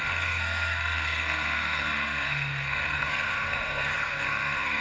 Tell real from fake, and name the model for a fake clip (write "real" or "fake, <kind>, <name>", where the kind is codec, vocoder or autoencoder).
fake, codec, SNAC